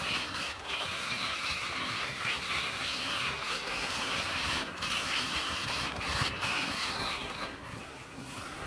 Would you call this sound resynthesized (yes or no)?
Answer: yes